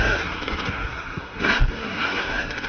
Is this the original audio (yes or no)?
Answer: no